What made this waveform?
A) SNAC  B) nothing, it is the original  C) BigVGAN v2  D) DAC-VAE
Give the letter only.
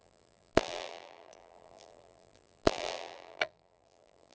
C